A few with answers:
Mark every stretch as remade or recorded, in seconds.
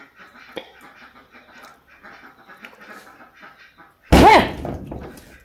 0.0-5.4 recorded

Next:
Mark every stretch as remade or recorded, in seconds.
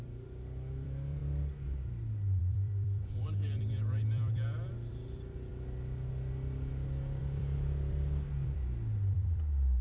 0.0-1.2 remade; 1.2-2.4 recorded; 2.4-5.5 remade; 5.5-7.2 recorded; 7.2-9.8 remade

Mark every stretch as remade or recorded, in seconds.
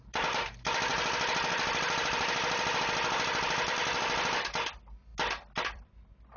0.0-5.1 remade; 5.1-5.6 recorded; 5.6-6.4 remade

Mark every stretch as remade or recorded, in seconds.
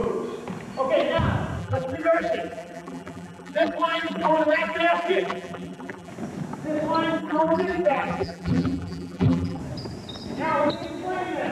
0.0-1.6 recorded; 1.6-6.1 remade; 6.1-7.2 recorded; 7.2-9.6 remade; 9.6-11.5 recorded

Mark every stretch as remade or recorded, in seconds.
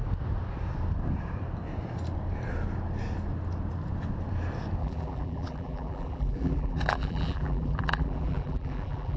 0.0-4.8 recorded; 4.8-9.2 remade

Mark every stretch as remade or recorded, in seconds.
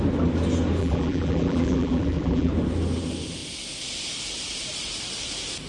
0.0-0.8 recorded; 0.8-2.5 remade; 2.5-5.7 recorded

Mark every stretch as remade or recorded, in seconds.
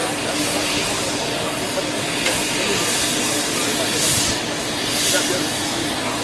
0.0-6.2 recorded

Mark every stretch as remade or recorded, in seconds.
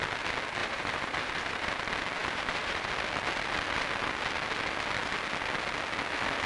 0.0-0.6 recorded; 0.6-1.8 remade; 1.8-2.2 recorded; 2.2-2.9 remade; 2.9-6.5 recorded